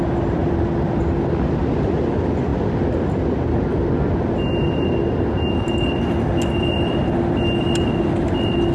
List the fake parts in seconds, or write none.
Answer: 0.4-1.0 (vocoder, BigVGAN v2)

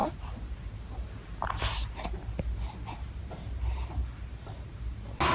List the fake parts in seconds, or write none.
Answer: 4.0-4.8 (vocoder, BigVGAN v2)

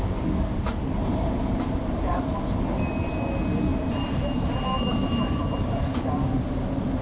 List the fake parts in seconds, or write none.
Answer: 1.0-2.2 (vocoder, BigVGAN v2); 3.7-5.4

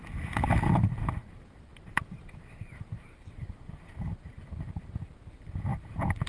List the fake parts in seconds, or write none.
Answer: 0.8-1.7 (vocoder, BigVGAN v2); 2.2-6.3